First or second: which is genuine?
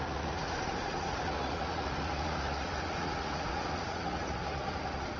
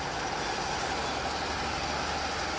second